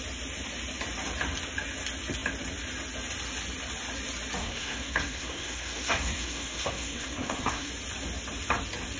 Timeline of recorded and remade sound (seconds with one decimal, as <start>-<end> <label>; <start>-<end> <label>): 0.0-4.4 recorded; 4.4-7.7 remade; 7.7-9.0 recorded